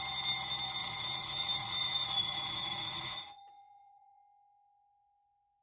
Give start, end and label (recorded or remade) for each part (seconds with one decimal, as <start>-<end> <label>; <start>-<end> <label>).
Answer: 0.0-0.8 recorded; 0.8-4.2 remade; 4.2-5.6 recorded